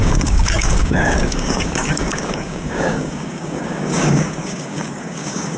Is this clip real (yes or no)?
no